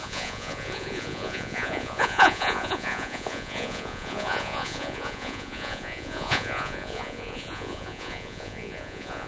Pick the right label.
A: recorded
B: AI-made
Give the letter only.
B